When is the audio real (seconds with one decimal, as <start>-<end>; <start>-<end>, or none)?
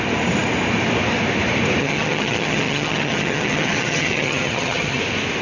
0.0-1.8; 5.0-5.4